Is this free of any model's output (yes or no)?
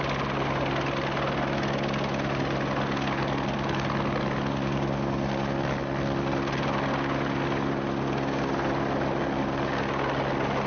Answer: yes